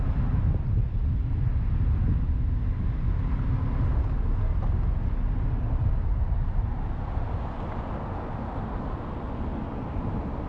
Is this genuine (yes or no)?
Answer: yes